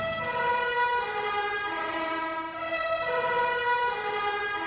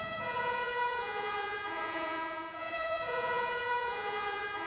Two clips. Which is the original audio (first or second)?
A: first